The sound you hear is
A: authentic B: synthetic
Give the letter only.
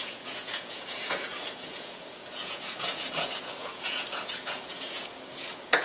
B